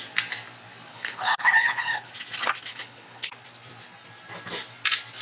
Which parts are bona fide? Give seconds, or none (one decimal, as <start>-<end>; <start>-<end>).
0.0-0.9; 2.1-2.7; 3.3-5.2